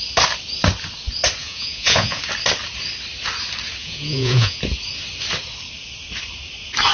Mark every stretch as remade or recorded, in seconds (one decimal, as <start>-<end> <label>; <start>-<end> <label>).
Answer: 0.0-1.4 recorded; 1.4-2.2 remade; 2.2-3.8 recorded; 3.8-4.6 remade; 4.6-6.9 recorded